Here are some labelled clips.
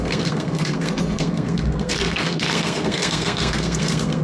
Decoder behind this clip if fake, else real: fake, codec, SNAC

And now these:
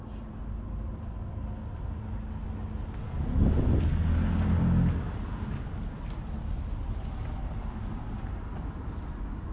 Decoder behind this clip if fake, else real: real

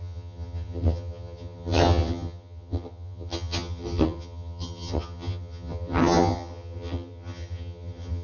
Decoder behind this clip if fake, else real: fake, vocoder, HiFi-GAN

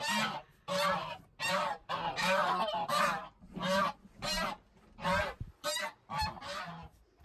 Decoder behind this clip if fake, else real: real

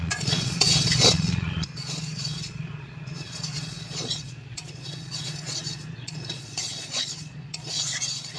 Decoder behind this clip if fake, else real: fake, vocoder, Vocos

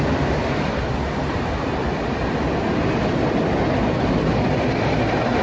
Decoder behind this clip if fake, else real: real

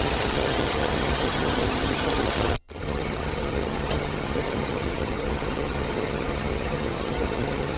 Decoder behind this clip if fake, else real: fake, vocoder, HiFi-GAN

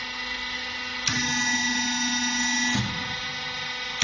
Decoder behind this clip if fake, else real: real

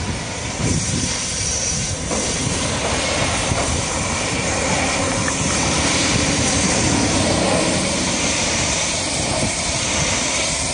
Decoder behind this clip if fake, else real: fake, vocoder, BigVGAN v2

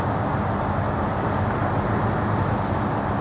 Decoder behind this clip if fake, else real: real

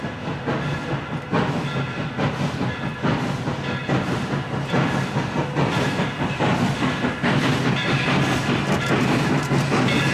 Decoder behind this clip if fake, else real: real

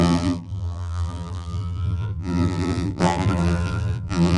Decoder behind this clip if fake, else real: fake, vocoder, BigVGAN v2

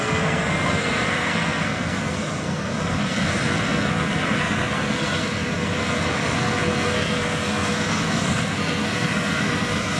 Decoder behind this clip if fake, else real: fake, codec, SNAC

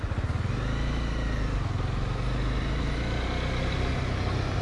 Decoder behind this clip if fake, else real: real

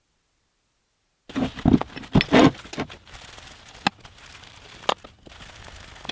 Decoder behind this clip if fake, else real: real